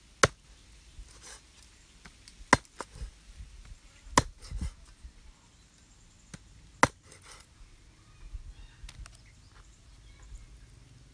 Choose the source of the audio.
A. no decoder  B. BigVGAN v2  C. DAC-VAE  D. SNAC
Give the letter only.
A